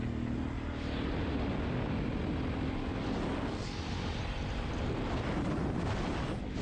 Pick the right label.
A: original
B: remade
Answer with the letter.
A